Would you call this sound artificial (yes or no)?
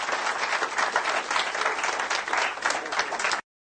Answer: no